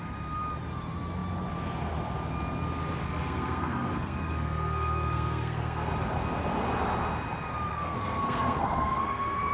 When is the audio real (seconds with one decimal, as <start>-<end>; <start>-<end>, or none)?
0.0-3.0; 5.9-7.7

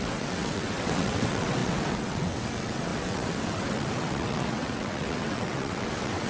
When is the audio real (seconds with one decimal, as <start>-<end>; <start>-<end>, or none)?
none

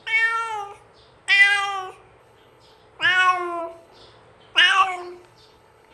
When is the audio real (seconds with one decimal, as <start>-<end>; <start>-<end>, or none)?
0.0-2.2; 2.8-3.6; 4.0-4.7

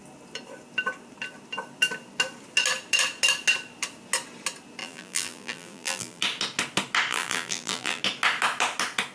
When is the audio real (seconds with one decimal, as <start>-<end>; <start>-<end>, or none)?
0.0-4.8; 6.2-7.1; 8.0-9.1

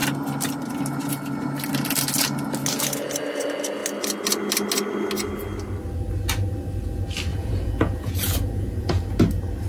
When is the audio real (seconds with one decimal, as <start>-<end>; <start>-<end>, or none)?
0.0-7.3; 9.2-9.7

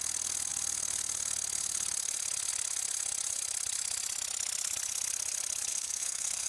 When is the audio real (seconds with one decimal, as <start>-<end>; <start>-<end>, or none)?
0.0-5.7